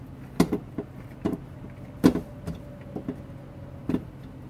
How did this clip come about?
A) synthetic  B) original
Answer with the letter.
B